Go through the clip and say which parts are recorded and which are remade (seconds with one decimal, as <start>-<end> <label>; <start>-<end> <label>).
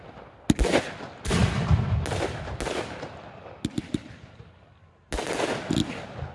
0.0-6.3 recorded